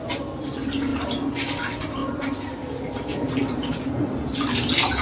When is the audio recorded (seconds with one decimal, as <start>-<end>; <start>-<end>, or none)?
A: 0.0-5.0